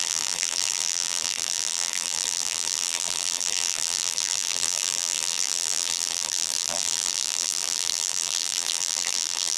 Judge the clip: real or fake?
fake